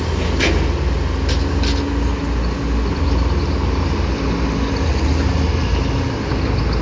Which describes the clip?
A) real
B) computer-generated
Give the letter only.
A